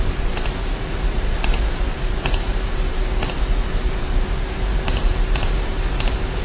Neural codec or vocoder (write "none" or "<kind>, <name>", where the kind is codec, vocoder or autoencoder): vocoder, BigVGAN v2